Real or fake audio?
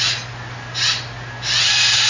real